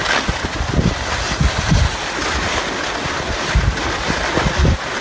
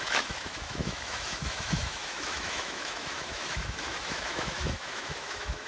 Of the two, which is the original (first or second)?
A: first